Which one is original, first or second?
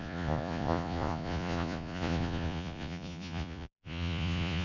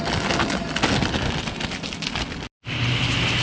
second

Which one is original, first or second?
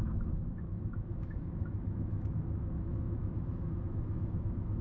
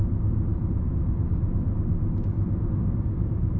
second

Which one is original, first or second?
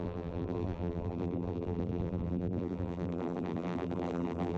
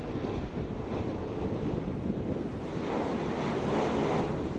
second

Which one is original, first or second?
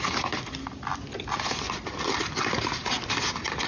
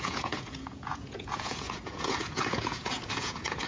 first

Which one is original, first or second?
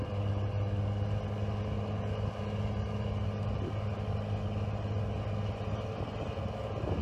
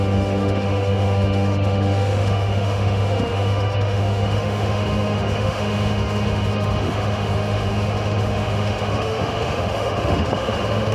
first